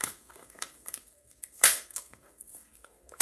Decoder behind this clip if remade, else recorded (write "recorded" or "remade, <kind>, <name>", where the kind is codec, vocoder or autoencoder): remade, codec, SNAC